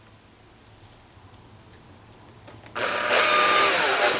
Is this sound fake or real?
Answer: real